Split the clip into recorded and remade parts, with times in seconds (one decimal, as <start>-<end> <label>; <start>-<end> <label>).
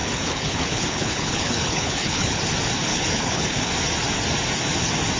0.0-2.4 remade; 2.4-2.9 recorded; 2.9-3.7 remade; 3.7-5.2 recorded